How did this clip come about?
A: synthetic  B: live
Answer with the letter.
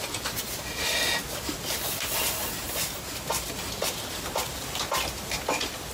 B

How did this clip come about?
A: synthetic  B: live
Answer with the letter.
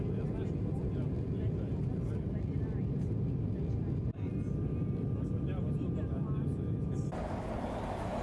B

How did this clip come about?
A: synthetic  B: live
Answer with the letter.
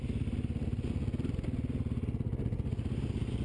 B